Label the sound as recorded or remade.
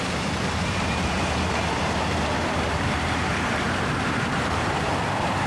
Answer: remade